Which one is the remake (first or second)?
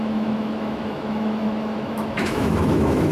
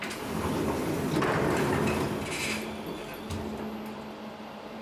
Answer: first